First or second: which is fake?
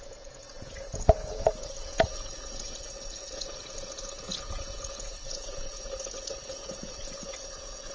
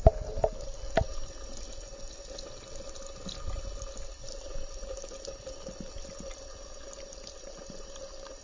first